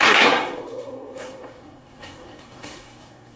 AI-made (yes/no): yes